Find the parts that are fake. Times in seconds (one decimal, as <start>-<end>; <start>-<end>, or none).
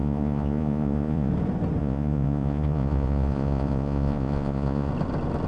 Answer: 0.0-1.3; 1.8-4.9